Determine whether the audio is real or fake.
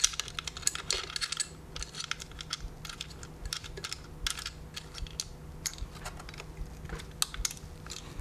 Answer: real